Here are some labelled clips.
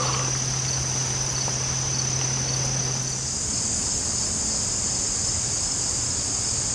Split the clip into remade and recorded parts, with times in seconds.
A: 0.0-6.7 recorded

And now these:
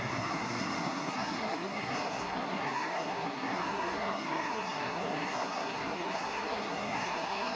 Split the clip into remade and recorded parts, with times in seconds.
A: 0.0-7.6 remade

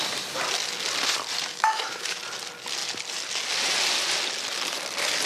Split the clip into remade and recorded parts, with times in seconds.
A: 0.0-1.5 recorded; 1.5-2.2 remade; 2.2-5.3 recorded

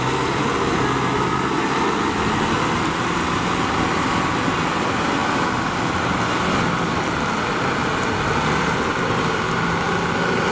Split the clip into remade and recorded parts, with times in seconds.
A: 0.0-10.5 recorded

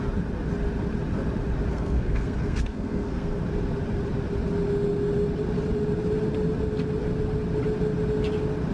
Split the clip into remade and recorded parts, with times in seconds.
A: 0.0-1.7 recorded; 1.7-3.4 remade; 3.4-8.7 recorded

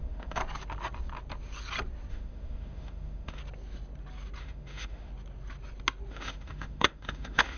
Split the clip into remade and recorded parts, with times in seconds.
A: 0.0-0.4 remade; 0.4-2.1 recorded; 2.1-3.4 remade; 3.4-4.4 recorded; 4.4-5.1 remade; 5.1-6.1 recorded; 6.1-7.6 remade

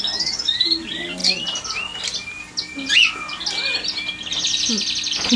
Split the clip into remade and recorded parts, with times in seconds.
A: 0.0-5.4 recorded

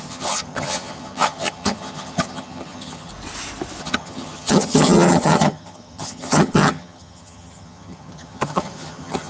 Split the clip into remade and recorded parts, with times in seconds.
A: 0.0-3.1 remade; 3.1-3.8 recorded; 3.8-9.3 remade